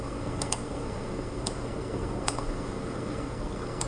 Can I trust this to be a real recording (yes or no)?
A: no